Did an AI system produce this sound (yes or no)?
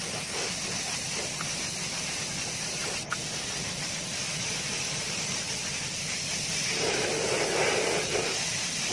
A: no